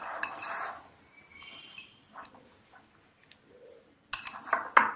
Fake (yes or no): no